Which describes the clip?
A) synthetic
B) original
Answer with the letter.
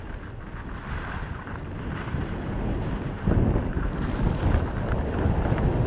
B